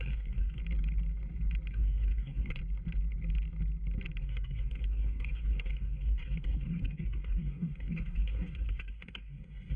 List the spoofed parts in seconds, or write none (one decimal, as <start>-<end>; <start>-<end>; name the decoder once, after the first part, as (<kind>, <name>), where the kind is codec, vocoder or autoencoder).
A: 0.0-0.6 (codec, SNAC); 1.7-2.6; 4.2-9.8